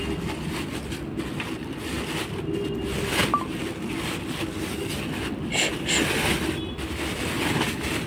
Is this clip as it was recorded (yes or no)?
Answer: yes